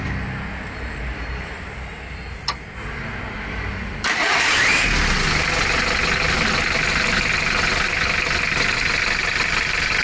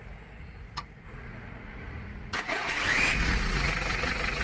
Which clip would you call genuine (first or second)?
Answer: first